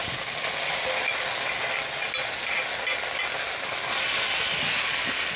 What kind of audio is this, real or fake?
real